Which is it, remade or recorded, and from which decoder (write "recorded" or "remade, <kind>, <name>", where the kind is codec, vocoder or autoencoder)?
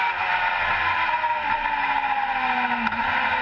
recorded